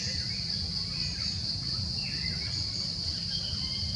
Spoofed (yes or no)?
no